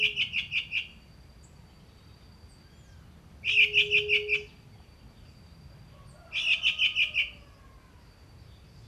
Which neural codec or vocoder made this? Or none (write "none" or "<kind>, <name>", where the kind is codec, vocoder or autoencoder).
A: none